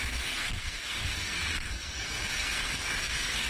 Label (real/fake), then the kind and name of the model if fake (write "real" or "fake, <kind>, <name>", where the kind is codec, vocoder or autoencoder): fake, codec, SNAC